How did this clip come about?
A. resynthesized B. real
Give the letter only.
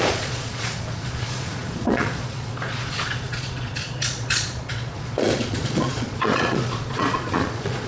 A